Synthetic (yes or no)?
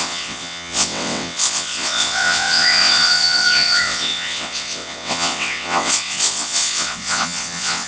yes